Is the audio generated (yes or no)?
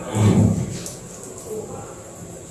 no